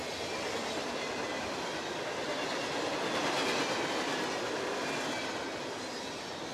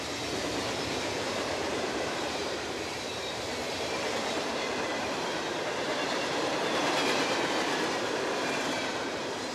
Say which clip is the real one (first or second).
first